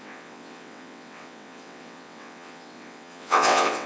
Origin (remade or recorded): remade